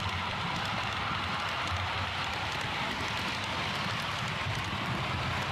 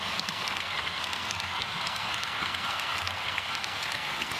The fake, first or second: second